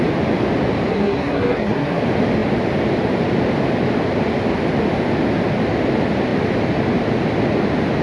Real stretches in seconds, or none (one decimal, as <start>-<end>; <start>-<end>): 0.0-0.9; 2.0-8.0

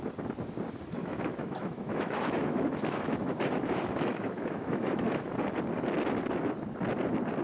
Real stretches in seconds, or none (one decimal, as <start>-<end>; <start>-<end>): 0.0-1.0; 5.3-7.4

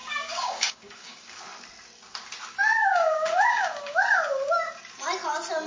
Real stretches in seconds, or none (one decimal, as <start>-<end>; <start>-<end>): 1.4-2.8; 4.5-5.7

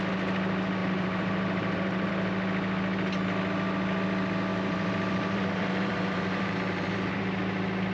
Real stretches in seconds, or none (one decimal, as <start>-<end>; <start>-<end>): 0.0-0.8; 2.1-4.5; 7.2-7.9

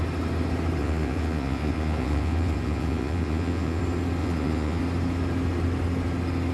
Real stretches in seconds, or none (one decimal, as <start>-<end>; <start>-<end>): 0.0-0.8; 3.8-4.2; 4.8-6.5